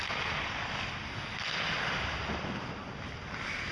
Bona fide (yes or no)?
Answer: yes